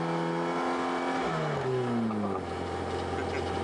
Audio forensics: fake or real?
real